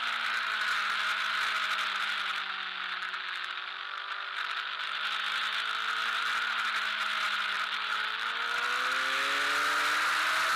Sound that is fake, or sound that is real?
real